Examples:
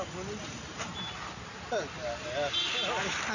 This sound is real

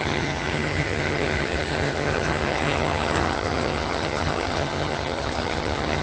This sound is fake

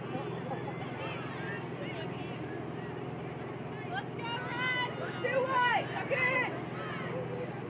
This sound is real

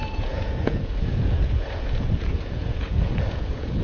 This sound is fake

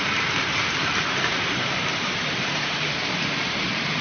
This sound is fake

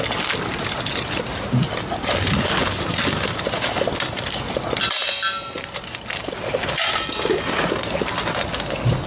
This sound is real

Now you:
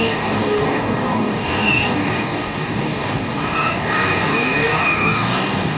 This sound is fake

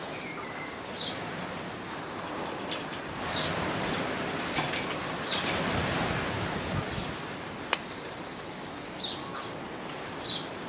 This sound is real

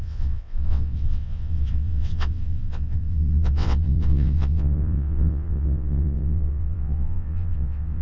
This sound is fake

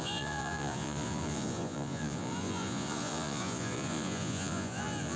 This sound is fake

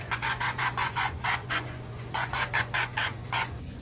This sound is fake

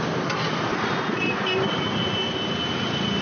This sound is real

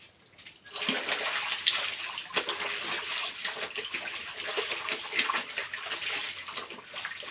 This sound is real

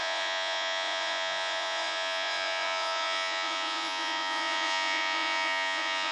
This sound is fake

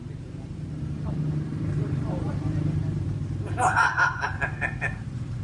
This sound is fake